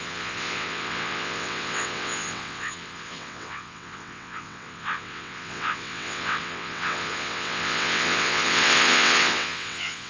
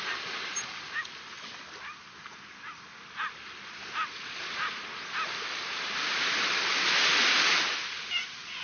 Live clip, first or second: second